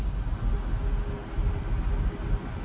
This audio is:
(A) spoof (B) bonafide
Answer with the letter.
B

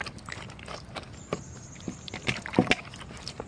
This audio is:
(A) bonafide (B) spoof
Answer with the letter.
B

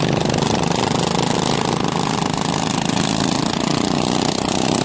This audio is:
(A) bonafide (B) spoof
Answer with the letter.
A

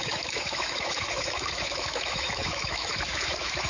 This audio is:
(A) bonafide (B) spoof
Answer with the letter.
B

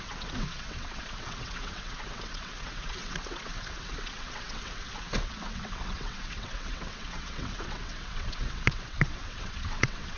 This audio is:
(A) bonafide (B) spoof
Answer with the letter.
B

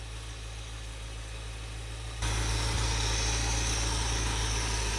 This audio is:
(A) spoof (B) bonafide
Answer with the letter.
B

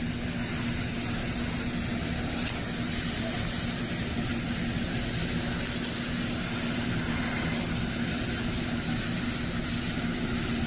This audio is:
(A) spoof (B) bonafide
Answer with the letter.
B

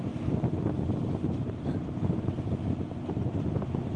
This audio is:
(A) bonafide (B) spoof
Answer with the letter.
A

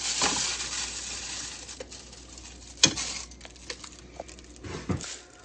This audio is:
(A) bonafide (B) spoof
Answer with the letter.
A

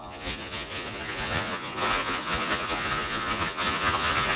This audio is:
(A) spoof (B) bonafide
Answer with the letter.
A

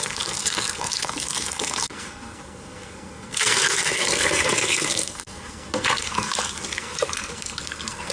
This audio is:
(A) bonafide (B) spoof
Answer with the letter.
B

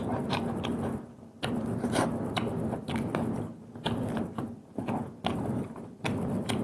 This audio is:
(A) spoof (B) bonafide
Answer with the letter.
B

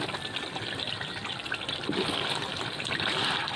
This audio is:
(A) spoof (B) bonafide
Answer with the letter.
B